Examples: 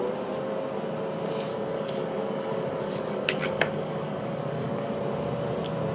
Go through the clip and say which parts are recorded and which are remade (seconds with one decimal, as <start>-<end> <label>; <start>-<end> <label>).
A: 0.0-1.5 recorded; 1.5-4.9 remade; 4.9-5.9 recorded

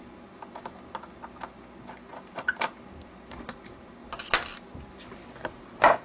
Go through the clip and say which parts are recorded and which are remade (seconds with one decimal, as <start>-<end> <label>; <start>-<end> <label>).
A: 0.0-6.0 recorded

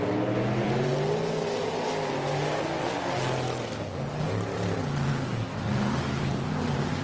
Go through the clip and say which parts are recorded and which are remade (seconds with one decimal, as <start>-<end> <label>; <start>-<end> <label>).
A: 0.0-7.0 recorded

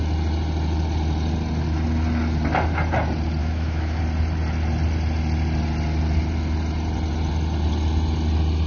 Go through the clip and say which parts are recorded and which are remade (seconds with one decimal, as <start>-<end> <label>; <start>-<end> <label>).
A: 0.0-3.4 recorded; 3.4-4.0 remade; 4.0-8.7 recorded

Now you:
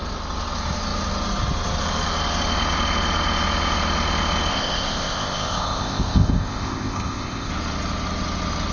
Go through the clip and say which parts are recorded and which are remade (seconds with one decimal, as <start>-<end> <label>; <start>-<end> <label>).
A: 0.0-4.5 recorded; 4.5-7.5 remade; 7.5-8.7 recorded